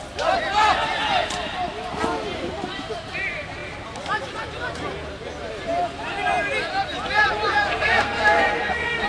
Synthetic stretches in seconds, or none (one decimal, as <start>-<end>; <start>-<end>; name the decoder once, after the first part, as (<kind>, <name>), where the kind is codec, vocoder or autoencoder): 7.7-9.1 (codec, SNAC)